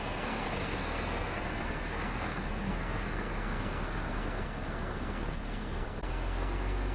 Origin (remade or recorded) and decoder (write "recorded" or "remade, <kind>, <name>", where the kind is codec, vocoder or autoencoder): remade, codec, SNAC